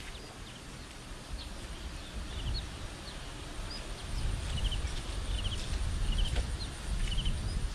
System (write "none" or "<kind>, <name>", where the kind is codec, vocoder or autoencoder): none